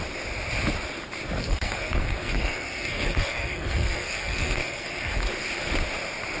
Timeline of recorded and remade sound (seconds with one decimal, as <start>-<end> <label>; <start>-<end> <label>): 0.0-1.4 recorded; 1.4-5.2 remade; 5.2-6.4 recorded